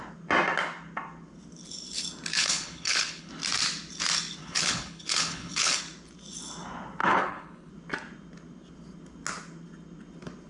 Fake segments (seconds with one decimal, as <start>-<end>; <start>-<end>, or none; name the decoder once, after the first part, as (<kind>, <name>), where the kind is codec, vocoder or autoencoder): 2.3-3.3 (codec, HILCodec); 4.4-5.8; 7.0-7.7